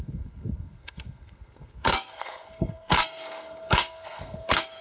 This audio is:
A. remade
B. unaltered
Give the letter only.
A